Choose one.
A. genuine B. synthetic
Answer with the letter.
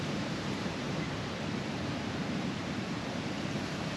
B